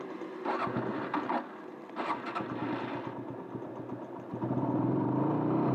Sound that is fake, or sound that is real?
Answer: real